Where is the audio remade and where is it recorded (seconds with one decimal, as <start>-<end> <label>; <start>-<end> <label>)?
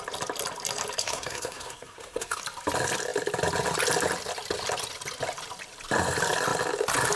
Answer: 0.0-1.0 recorded; 1.0-2.4 remade; 2.4-7.2 recorded